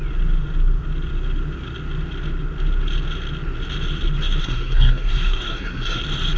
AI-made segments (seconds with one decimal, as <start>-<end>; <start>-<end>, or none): 4.4-6.0